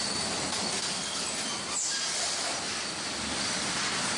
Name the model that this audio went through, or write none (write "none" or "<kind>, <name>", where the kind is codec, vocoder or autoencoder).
none